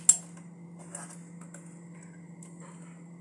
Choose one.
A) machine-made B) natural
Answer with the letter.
B